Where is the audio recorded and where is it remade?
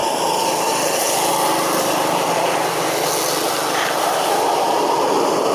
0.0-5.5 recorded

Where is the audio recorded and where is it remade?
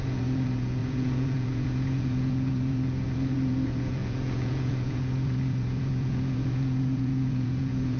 0.0-8.0 remade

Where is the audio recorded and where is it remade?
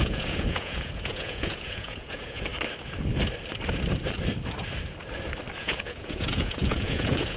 0.0-2.5 remade; 2.5-5.6 recorded; 5.6-7.4 remade